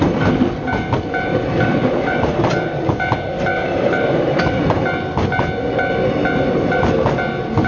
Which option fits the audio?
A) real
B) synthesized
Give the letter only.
A